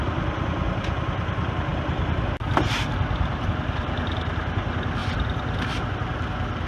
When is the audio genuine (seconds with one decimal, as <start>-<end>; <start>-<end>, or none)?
0.0-6.7